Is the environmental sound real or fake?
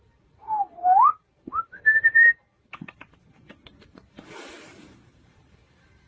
fake